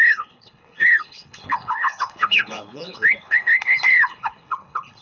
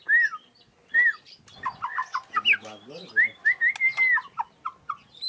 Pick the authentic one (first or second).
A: second